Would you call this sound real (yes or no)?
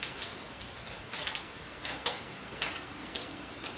no